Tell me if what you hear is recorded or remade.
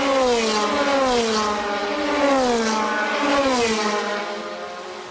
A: recorded